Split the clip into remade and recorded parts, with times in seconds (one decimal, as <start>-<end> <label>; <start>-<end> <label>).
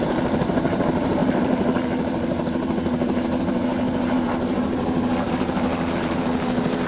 0.0-6.9 remade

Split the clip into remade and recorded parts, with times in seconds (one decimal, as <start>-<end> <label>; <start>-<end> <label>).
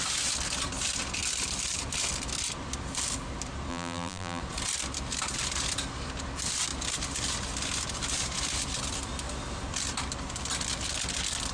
0.0-3.7 recorded; 3.7-4.4 remade; 4.4-11.5 recorded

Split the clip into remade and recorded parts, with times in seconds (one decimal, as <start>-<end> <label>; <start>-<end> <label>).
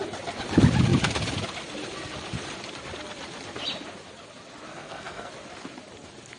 0.0-4.7 recorded; 4.7-5.3 remade; 5.3-6.4 recorded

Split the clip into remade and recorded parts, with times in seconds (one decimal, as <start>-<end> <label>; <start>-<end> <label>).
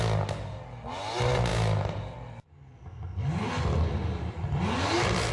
0.0-1.5 recorded; 1.5-2.0 remade; 2.0-2.7 recorded; 2.7-5.3 remade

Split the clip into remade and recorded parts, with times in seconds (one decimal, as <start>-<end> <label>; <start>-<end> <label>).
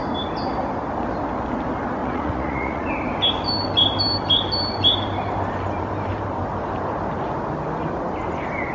0.0-2.0 recorded; 2.0-2.9 remade; 2.9-8.7 recorded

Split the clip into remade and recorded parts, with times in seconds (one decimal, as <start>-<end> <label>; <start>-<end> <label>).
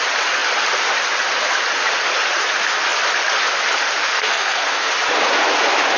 0.0-4.1 recorded; 4.1-4.9 remade; 4.9-6.0 recorded